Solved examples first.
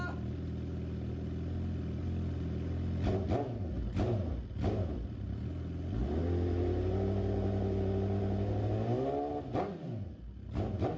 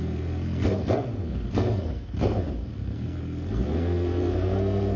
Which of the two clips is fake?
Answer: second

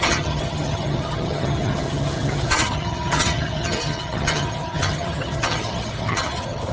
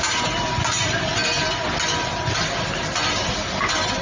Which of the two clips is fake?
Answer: first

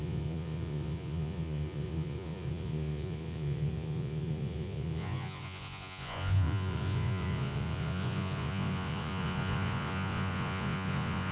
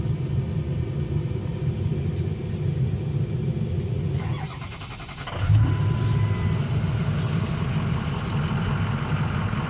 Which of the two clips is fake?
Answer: first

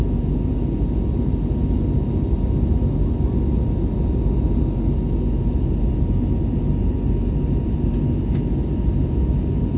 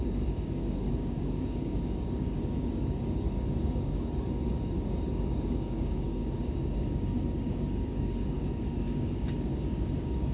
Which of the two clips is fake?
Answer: second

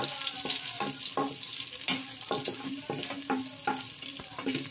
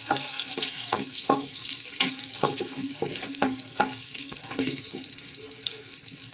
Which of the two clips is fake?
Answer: second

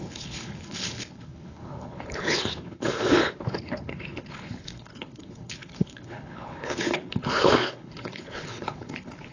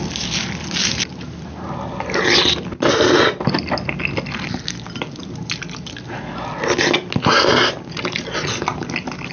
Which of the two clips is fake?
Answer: first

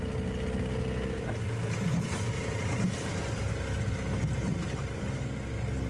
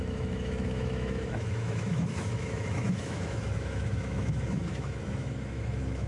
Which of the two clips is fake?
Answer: second